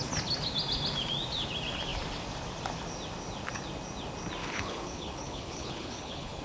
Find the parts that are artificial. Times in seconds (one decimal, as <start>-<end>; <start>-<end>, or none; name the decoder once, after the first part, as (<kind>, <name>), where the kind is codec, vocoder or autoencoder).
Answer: 4.4-6.4 (codec, HILCodec)